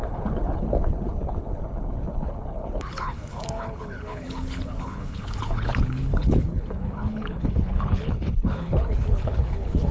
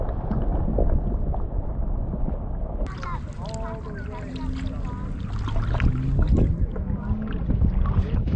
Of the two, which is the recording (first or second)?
second